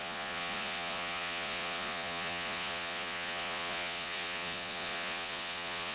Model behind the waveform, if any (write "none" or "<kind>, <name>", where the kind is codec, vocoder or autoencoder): vocoder, Vocos